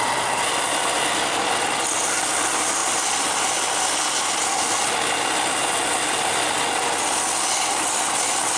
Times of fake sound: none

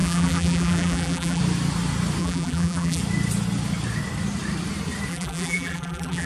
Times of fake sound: 0.0-1.4 (vocoder, BigVGAN v2); 2.2-3.0; 5.1-6.3

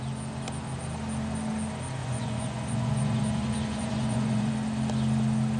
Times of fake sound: 2.0-4.5 (vocoder, Vocos)